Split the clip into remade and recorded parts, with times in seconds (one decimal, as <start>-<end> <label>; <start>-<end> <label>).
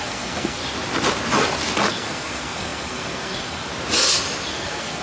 0.0-0.6 remade; 0.6-1.9 recorded; 1.9-3.7 remade; 3.7-4.5 recorded; 4.5-5.0 remade